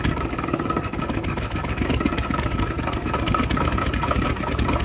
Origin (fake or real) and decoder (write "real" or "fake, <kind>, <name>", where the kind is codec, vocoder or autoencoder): fake, codec, DAC